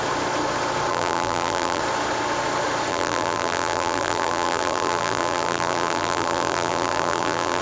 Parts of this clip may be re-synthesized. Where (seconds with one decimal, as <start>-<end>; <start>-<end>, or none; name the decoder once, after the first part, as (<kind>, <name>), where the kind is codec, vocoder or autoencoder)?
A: 0.9-1.8 (vocoder, BigVGAN v2); 2.9-7.6